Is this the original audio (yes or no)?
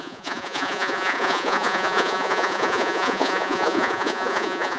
no